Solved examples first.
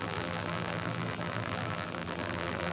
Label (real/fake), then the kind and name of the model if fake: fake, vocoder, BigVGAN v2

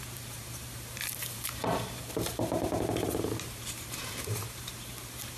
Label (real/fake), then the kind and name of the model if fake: fake, vocoder, BigVGAN v2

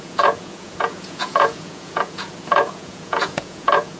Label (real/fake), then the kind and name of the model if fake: fake, vocoder, Vocos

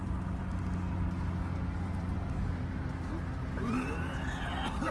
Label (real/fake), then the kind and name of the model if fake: real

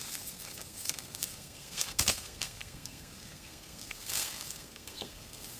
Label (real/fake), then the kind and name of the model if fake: fake, codec, SNAC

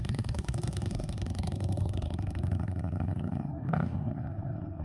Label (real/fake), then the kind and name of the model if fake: fake, codec, SNAC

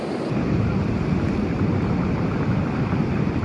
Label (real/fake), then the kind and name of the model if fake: real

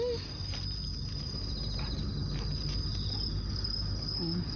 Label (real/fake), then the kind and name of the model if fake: real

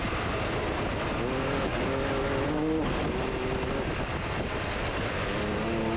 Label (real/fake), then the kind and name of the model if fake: real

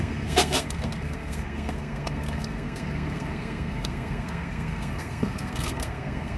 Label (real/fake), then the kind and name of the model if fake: fake, codec, SNAC